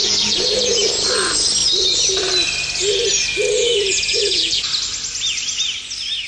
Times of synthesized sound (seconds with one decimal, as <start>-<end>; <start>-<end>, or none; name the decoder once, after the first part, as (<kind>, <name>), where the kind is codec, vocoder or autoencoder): 0.0-0.9 (vocoder, Vocos); 3.4-4.7